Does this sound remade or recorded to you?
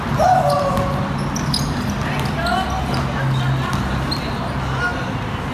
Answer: recorded